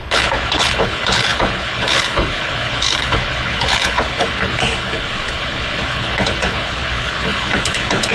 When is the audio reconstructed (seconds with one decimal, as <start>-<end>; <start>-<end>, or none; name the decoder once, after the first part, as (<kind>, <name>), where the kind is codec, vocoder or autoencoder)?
0.0-8.1 (codec, HILCodec)

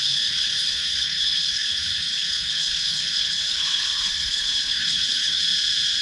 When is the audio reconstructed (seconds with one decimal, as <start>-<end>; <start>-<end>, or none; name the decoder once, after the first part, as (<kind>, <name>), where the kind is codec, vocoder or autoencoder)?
0.0-5.4 (codec, HILCodec)

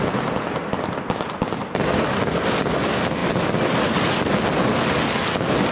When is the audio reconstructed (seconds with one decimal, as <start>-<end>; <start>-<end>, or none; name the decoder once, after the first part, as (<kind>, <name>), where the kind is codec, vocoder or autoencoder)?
none

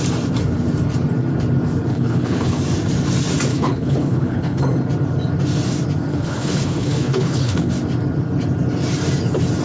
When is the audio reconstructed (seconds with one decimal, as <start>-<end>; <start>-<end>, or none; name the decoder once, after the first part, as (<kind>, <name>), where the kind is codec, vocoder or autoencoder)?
1.9-2.6 (codec, HILCodec); 3.5-4.6; 6.1-7.7

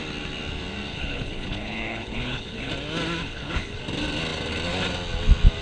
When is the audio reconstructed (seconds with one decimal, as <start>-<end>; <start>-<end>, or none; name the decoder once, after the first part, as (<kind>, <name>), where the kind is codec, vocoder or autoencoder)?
0.9-2.7 (codec, HILCodec); 3.2-3.8

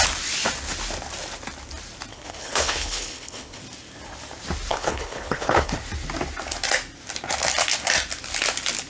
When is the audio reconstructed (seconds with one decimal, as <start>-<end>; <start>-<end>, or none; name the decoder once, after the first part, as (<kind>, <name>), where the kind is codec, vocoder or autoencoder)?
2.1-3.6 (codec, HILCodec); 4.7-5.7

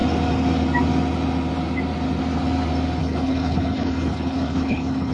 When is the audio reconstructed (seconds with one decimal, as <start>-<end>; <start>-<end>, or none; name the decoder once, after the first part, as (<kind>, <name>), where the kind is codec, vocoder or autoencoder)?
3.0-5.1 (codec, HILCodec)